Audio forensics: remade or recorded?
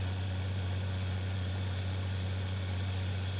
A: remade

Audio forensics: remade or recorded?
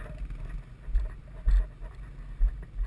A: recorded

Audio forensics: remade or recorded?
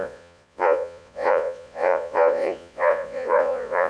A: remade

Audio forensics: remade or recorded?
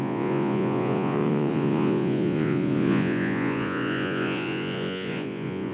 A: remade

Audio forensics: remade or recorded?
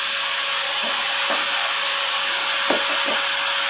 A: recorded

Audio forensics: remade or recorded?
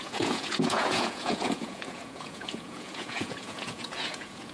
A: remade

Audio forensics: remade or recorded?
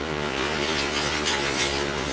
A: remade